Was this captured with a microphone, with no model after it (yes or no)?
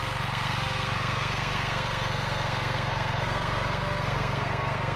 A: no